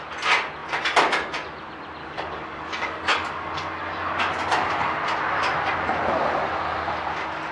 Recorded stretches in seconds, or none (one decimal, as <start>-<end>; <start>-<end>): 0.0-2.0; 4.2-7.5